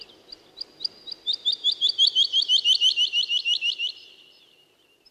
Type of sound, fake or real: real